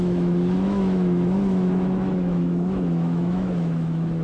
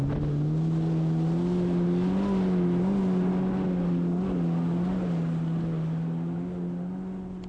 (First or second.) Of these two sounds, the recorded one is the second